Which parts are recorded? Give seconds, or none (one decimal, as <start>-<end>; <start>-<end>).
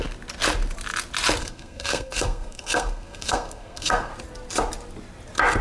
0.0-1.4; 4.1-5.6